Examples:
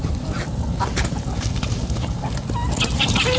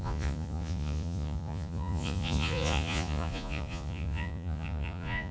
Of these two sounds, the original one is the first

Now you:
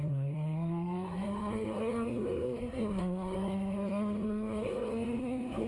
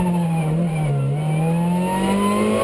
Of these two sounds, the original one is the second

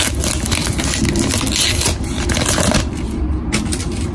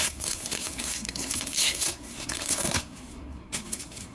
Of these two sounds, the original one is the first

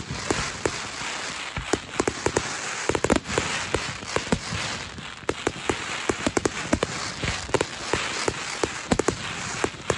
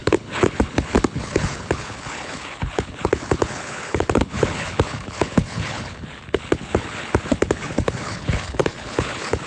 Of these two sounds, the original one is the first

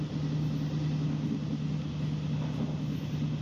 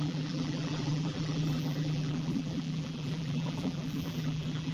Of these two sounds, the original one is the first